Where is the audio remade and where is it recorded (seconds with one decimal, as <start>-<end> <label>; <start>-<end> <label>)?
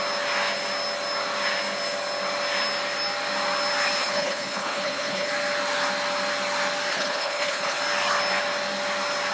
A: 0.0-4.0 recorded; 4.0-5.3 remade; 5.3-6.9 recorded; 6.9-7.8 remade; 7.8-9.3 recorded